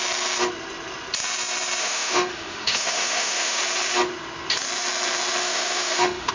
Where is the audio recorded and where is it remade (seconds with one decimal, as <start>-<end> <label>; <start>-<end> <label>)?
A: 0.0-1.8 recorded; 1.8-3.6 remade; 3.6-5.4 recorded; 5.4-6.3 remade